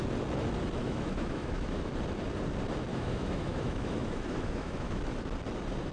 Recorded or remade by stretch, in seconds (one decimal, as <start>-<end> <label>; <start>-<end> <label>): 0.0-0.8 recorded; 0.8-1.9 remade; 1.9-2.9 recorded; 2.9-5.2 remade; 5.2-5.9 recorded